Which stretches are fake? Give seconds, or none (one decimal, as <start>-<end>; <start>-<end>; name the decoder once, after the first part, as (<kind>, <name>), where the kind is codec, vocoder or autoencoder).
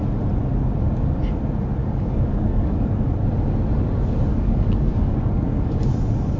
1.8-3.1 (codec, DAC); 4.3-5.9